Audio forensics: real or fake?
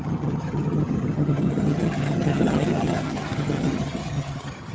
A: fake